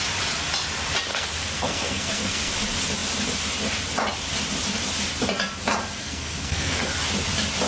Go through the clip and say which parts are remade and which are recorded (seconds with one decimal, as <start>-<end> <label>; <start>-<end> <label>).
0.0-1.1 recorded; 1.1-2.5 remade; 2.5-6.0 recorded; 6.0-6.8 remade; 6.8-7.7 recorded

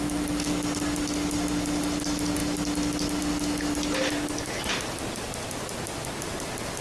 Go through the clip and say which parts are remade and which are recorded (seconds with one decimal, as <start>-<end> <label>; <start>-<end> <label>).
0.0-6.8 recorded

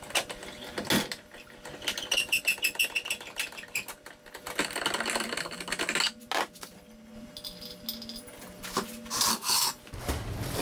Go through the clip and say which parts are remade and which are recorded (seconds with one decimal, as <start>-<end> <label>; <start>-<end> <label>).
0.0-9.3 recorded; 9.3-9.8 remade; 9.8-10.6 recorded

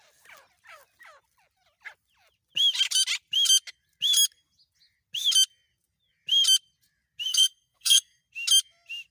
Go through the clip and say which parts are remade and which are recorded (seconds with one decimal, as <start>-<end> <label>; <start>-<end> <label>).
0.0-7.3 recorded; 7.3-8.2 remade; 8.2-9.1 recorded